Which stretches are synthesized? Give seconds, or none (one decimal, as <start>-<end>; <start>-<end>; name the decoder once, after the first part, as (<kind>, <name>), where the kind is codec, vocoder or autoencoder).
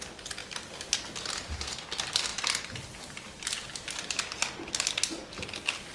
none